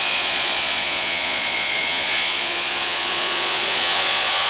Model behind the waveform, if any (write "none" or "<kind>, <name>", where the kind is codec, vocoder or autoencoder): vocoder, Vocos